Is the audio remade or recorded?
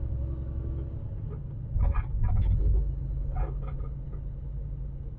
recorded